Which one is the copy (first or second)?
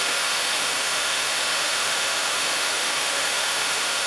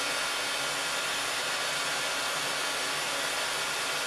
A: first